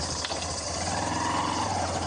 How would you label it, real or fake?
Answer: real